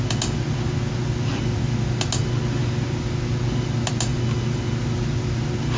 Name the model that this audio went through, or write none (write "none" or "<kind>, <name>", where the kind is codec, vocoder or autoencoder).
none